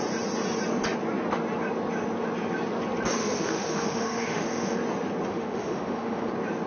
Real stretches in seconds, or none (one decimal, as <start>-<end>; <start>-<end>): 0.0-3.2; 4.8-5.3; 6.3-6.7